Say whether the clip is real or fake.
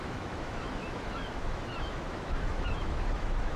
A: fake